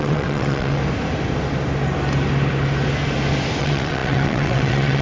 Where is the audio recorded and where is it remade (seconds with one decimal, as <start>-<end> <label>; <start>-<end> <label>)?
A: 0.0-0.8 remade; 0.8-3.6 recorded; 3.6-5.0 remade